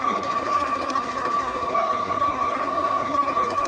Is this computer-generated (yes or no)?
yes